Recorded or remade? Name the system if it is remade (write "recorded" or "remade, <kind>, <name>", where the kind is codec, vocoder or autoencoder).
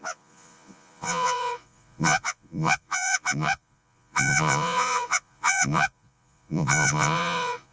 remade, vocoder, Vocos